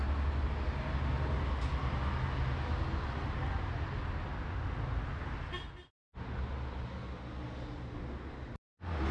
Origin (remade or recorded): recorded